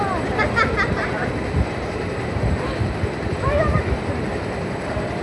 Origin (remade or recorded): recorded